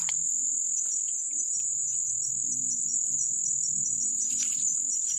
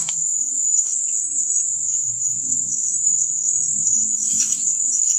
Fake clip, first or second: second